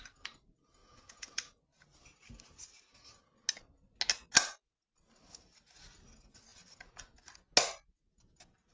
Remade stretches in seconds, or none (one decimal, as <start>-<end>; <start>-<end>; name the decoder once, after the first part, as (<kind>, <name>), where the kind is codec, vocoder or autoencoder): 0.8-1.6 (vocoder, Vocos)